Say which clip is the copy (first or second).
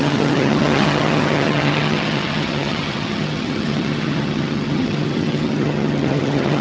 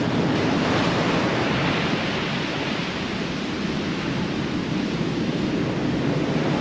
first